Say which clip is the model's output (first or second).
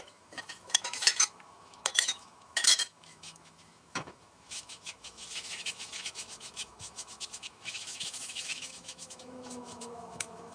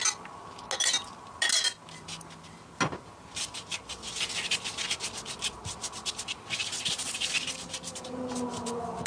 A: first